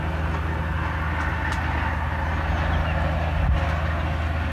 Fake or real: real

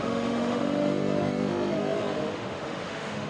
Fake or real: fake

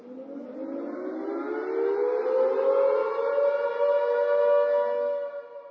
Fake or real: real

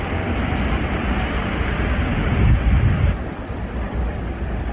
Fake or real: real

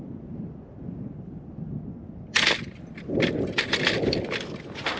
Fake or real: real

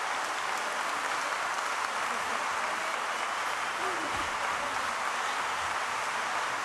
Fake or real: real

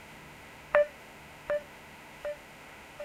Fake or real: fake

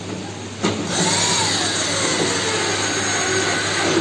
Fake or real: real